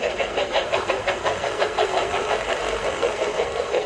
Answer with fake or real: fake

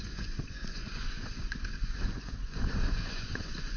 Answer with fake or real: fake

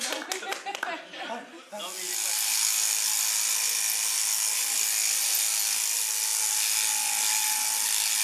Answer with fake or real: real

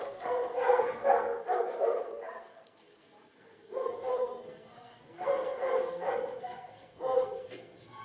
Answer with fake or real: fake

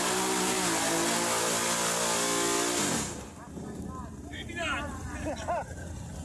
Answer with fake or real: real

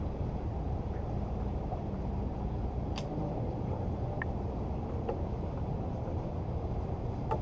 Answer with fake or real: fake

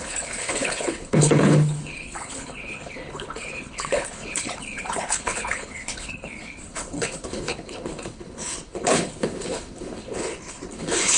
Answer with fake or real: fake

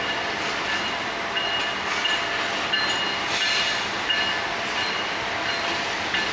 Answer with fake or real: real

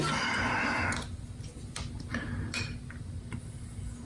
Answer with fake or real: real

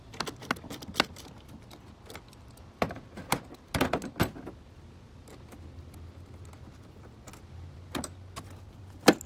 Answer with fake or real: real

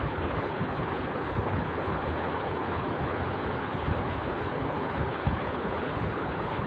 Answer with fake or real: fake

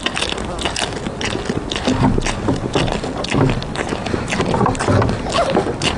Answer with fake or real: real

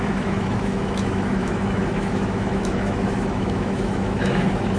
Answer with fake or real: fake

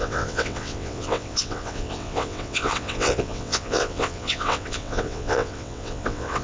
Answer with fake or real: fake